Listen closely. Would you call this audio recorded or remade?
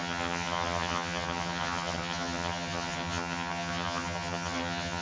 remade